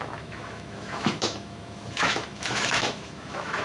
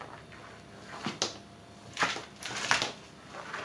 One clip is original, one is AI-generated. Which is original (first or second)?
second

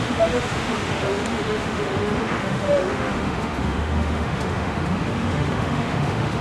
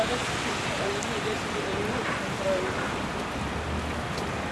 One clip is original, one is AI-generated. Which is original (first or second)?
second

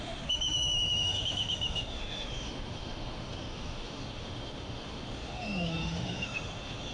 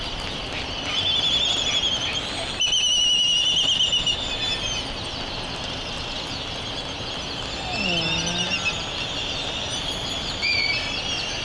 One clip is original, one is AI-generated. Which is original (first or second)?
second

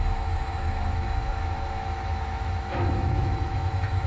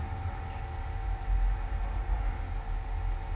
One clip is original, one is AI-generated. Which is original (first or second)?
second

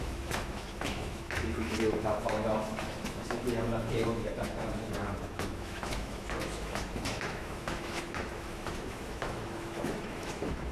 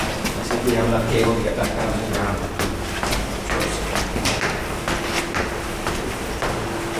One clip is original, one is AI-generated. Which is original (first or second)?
second